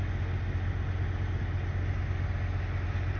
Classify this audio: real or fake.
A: real